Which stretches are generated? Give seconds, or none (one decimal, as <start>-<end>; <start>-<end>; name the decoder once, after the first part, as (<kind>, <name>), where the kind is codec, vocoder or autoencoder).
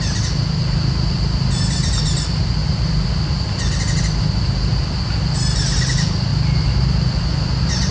none